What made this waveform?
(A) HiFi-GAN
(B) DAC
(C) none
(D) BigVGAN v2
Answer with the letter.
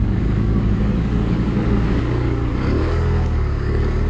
B